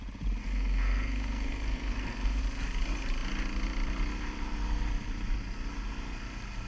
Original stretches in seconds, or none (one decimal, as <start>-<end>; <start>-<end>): 0.0-0.4; 2.4-6.7